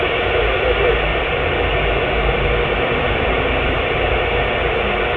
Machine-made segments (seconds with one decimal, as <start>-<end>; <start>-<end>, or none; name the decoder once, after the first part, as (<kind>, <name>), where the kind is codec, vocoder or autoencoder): 1.1-4.2 (vocoder, BigVGAN v2)